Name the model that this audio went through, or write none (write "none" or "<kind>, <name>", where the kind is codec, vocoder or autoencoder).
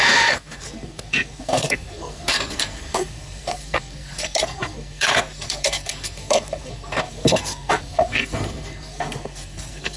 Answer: codec, SNAC